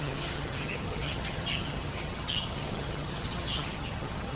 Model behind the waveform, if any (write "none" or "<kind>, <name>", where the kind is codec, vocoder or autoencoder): vocoder, HiFi-GAN